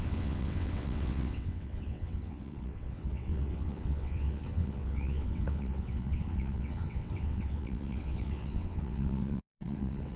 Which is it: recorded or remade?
remade